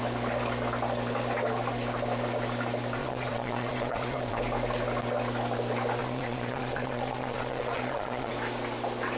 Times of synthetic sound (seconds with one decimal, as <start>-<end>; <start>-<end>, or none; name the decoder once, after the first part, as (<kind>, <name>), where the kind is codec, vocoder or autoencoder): 3.0-4.4 (vocoder, Vocos); 6.0-8.3